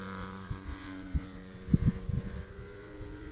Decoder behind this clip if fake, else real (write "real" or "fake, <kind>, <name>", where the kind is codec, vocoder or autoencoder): fake, vocoder, Vocos